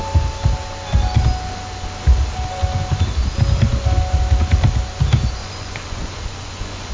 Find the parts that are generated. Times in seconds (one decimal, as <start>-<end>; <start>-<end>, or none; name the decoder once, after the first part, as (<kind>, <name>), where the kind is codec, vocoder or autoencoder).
5.4-6.9 (vocoder, Vocos)